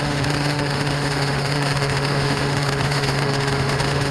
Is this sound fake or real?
fake